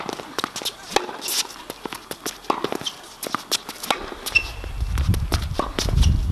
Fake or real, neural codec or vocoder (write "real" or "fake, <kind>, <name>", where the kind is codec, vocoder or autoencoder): real